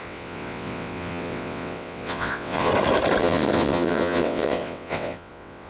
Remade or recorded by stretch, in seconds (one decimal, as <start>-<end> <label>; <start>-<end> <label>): 0.0-2.7 remade; 2.7-3.2 recorded; 3.2-5.7 remade